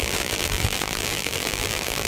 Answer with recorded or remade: remade